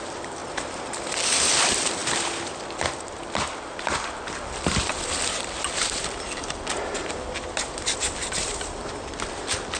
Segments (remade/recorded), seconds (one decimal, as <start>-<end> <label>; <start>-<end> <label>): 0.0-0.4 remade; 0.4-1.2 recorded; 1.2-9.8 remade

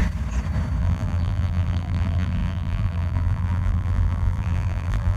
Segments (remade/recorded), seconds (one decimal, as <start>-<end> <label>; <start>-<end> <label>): 0.0-0.8 recorded; 0.8-5.2 remade

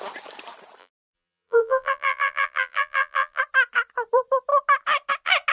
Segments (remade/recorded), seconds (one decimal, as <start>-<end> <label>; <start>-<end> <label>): 0.0-0.8 recorded; 0.8-3.4 remade; 3.4-5.5 recorded